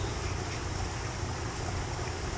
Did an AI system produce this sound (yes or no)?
no